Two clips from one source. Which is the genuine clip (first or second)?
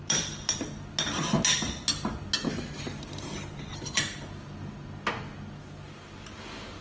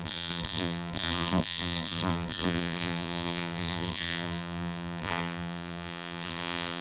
first